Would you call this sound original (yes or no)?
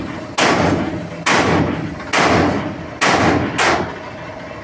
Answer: yes